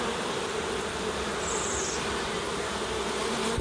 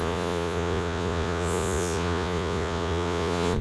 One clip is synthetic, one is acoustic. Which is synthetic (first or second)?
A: second